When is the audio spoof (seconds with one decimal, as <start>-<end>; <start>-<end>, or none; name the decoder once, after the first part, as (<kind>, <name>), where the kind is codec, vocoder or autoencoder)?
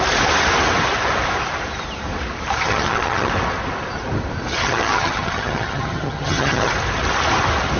2.6-3.3 (vocoder, HiFi-GAN); 4.5-6.7